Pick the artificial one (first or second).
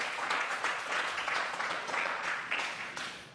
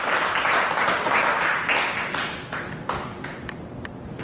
first